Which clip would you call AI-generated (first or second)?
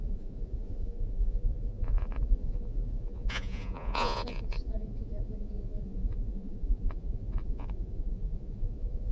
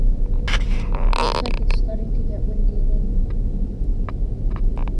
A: first